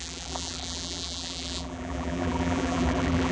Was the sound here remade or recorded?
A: remade